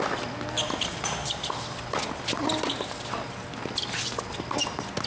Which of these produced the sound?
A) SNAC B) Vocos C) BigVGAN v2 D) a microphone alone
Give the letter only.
D